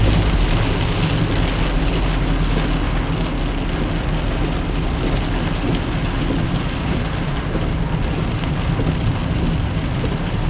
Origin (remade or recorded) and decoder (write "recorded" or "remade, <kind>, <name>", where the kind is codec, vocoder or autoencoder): recorded